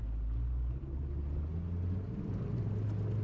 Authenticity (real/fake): real